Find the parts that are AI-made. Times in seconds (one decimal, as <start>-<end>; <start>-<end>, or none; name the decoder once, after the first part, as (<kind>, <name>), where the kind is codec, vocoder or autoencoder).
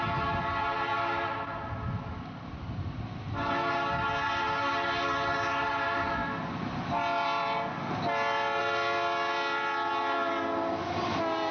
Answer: none